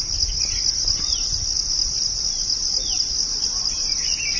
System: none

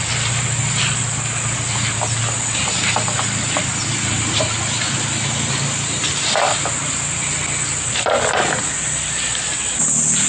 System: none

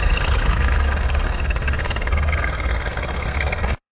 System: codec, SNAC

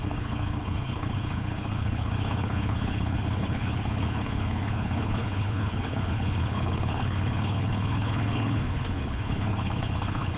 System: codec, HILCodec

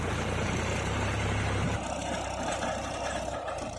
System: vocoder, BigVGAN v2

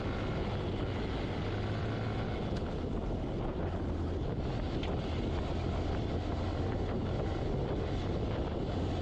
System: none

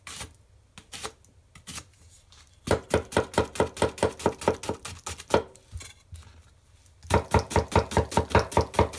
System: none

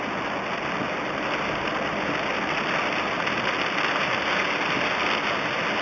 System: none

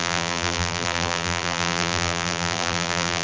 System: vocoder, BigVGAN v2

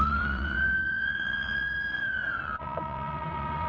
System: vocoder, WaveNeXt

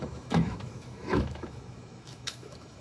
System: autoencoder, DAC-VAE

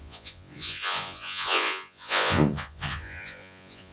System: vocoder, Vocos